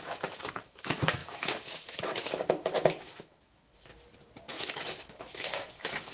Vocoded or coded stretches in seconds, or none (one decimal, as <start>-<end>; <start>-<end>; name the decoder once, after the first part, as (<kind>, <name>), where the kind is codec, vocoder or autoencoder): 0.0-3.9 (autoencoder, DAC-VAE); 4.5-6.1

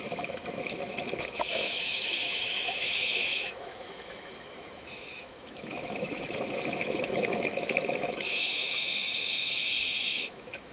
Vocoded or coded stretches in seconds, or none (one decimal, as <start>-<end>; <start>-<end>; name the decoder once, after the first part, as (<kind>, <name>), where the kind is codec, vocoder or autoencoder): 0.0-10.7 (autoencoder, DAC-VAE)

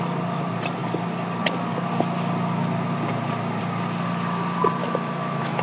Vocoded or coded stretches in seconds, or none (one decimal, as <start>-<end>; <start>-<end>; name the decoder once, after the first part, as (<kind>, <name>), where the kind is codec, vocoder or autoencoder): 4.8-5.6 (autoencoder, DAC-VAE)

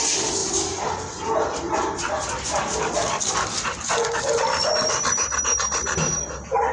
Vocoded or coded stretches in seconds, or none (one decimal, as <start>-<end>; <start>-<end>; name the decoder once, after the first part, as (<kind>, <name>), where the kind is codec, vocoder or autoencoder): none

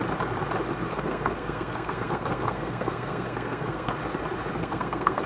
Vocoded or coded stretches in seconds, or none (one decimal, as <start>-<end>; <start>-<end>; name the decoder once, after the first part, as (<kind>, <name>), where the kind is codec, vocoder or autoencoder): 0.9-3.9 (codec, SNAC); 4.6-5.3

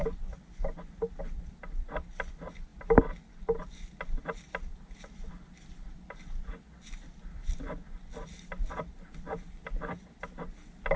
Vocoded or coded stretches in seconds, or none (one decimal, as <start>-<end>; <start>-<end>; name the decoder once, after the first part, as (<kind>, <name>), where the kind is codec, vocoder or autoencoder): none